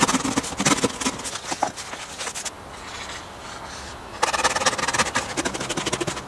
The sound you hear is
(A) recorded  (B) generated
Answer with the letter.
A